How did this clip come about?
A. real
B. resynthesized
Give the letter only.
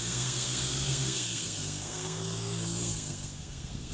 B